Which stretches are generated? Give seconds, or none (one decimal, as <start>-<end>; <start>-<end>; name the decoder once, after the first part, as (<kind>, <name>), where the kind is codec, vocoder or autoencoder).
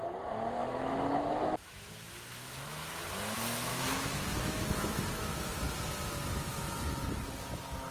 0.6-3.0 (autoencoder, DAC-VAE); 3.7-5.6